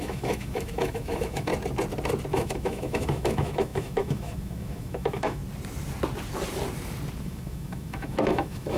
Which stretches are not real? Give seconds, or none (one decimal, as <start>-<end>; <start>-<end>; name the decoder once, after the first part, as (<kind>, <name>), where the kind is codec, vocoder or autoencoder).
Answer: 0.0-1.5 (autoencoder, DAC-VAE); 2.3-5.4; 7.2-8.8

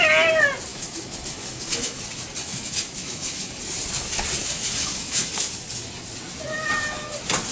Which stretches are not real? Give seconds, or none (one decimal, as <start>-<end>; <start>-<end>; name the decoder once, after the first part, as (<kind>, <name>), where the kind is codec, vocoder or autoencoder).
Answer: 0.7-2.0 (autoencoder, DAC-VAE); 2.4-3.5; 4.4-5.3

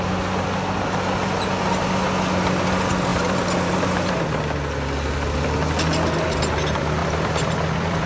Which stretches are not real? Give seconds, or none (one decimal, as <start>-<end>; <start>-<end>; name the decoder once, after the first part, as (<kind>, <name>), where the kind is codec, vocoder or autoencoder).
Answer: 3.1-4.2 (vocoder, BigVGAN v2); 7.0-8.1

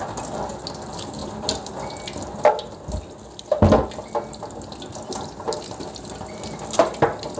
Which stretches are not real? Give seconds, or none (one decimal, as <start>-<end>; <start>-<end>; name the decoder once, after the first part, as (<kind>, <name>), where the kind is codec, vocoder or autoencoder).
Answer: 1.2-1.7 (vocoder, BigVGAN v2)